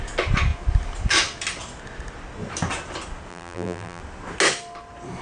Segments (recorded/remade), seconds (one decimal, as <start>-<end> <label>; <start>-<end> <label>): 0.0-3.3 recorded; 3.3-4.0 remade; 4.0-5.2 recorded

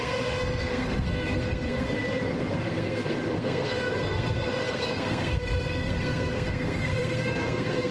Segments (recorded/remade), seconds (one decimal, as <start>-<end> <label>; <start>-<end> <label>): 0.0-7.9 remade

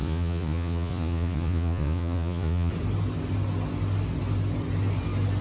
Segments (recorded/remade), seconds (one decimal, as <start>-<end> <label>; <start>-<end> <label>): 0.0-2.7 remade; 2.7-5.4 recorded